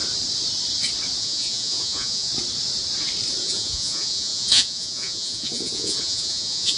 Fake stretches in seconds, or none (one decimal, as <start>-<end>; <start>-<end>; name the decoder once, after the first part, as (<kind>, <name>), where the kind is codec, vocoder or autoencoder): 1.2-2.3 (vocoder, Vocos); 3.4-6.8